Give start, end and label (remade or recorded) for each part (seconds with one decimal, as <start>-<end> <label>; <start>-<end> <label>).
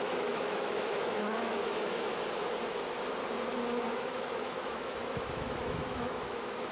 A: 0.0-2.1 remade; 2.1-3.9 recorded; 3.9-6.7 remade